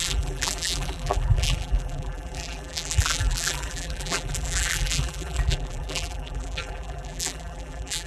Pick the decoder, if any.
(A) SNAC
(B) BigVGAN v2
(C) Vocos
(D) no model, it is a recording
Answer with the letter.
B